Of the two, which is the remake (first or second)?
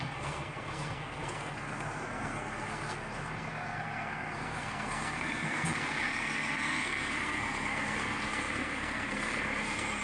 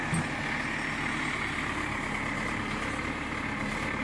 first